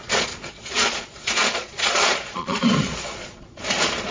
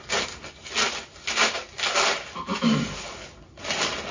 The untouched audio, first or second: second